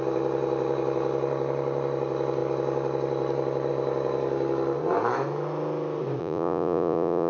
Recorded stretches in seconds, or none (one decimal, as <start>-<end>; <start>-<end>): 0.0-6.2